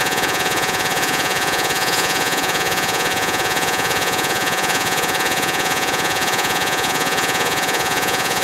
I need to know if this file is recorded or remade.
remade